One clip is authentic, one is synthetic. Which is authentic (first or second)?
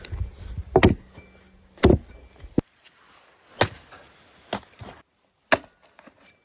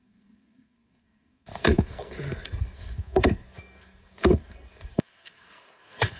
first